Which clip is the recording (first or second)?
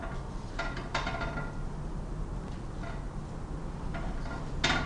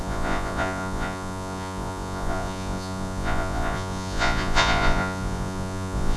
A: first